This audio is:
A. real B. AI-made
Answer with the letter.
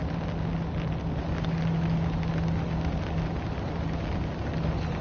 A